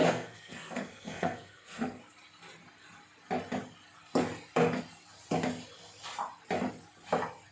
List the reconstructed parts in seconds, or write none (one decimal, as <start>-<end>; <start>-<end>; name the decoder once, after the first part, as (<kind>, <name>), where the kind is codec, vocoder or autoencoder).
0.0-2.0 (codec, SNAC)